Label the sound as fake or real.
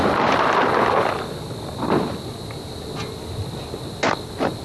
real